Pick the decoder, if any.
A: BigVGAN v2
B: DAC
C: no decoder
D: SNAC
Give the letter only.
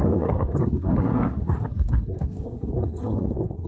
D